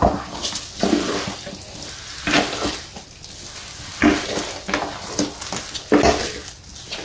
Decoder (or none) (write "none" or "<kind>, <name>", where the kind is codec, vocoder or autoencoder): none